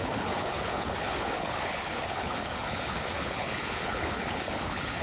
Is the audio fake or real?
fake